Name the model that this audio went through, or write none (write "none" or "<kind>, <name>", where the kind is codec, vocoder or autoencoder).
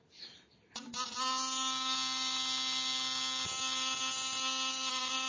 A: none